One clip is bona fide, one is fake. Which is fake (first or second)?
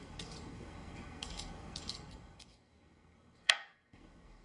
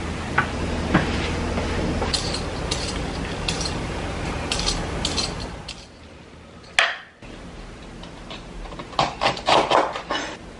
first